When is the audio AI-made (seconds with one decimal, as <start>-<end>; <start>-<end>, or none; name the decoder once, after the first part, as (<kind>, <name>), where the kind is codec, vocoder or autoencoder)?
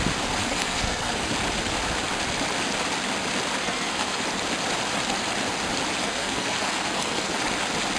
0.4-1.3 (codec, SNAC); 3.6-4.2; 6.0-7.3